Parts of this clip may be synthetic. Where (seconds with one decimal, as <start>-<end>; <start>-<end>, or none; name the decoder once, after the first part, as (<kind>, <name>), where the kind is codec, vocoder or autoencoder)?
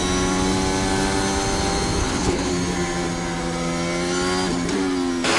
2.0-2.5 (codec, HILCodec)